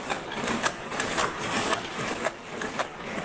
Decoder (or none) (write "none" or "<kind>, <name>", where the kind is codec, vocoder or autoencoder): codec, DAC